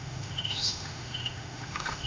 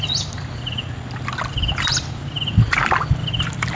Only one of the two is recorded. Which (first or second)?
second